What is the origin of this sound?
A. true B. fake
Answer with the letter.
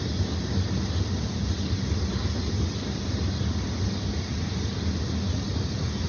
A